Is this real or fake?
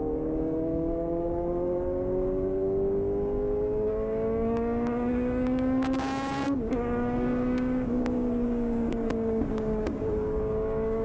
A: fake